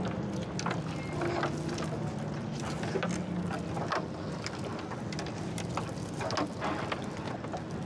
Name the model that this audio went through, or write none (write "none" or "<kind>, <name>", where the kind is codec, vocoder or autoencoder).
none